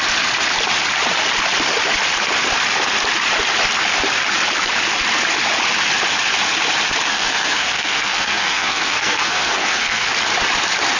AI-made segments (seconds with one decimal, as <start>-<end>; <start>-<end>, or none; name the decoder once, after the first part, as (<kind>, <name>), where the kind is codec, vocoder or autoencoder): 7.1-10.1 (codec, SNAC)